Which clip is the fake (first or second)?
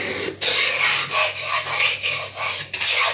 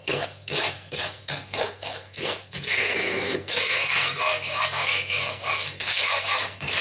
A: second